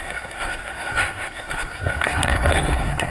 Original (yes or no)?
no